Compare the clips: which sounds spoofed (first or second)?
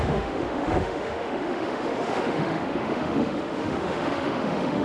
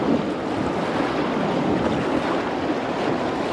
first